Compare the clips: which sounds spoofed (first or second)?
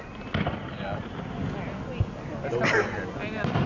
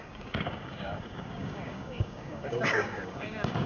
second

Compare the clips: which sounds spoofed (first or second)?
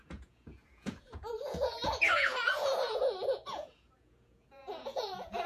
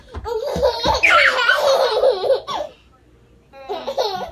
first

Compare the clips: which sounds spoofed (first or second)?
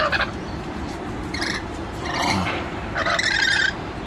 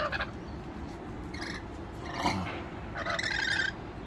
first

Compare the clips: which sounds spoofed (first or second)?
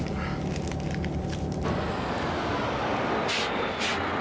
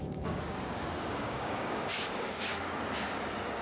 second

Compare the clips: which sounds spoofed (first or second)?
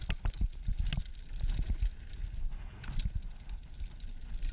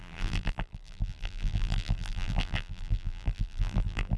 second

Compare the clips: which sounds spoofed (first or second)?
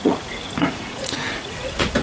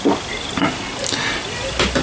first